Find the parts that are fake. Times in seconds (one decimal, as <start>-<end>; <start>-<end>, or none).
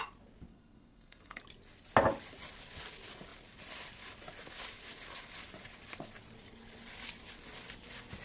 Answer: 0.5-1.4